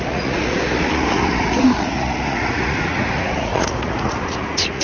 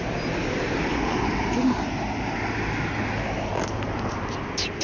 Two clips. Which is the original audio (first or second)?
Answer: second